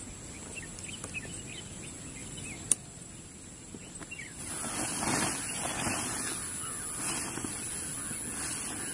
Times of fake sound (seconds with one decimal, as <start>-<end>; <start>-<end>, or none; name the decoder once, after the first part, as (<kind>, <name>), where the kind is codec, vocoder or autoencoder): 2.2-3.2 (vocoder, BigVGAN v2); 4.0-4.5